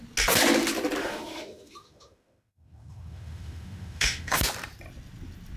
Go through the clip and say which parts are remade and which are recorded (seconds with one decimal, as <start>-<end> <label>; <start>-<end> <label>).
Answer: 0.0-1.0 recorded; 1.0-4.4 remade; 4.4-5.6 recorded